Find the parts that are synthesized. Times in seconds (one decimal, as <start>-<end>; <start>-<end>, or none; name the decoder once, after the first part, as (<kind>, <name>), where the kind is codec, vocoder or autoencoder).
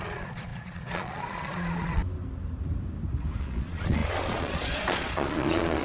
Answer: 0.0-2.0 (vocoder, Vocos); 3.4-5.8